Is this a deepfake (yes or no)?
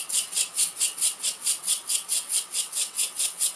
yes